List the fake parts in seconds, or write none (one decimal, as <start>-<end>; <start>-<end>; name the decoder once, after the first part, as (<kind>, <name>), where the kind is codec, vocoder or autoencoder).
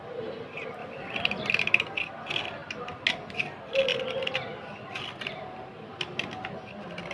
0.8-1.5 (vocoder, BigVGAN v2)